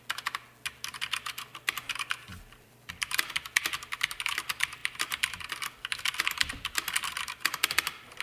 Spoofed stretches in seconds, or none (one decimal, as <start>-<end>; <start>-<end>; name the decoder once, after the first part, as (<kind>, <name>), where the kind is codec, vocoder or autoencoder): 2.3-2.9 (vocoder, BigVGAN v2)